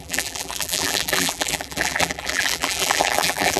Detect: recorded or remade remade